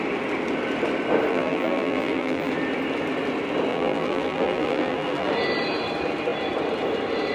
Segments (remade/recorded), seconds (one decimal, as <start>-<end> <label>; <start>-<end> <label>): 0.0-1.3 recorded; 1.3-2.5 remade; 2.5-3.7 recorded; 3.7-5.3 remade; 5.3-7.3 recorded